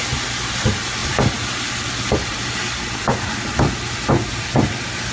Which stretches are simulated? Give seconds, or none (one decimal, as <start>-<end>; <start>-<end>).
none